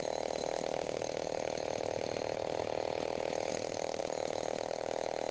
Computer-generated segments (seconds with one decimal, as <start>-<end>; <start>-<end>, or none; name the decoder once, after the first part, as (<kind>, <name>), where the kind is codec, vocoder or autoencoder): 0.4-2.6 (vocoder, BigVGAN v2); 3.5-4.0